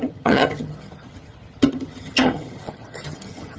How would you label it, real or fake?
fake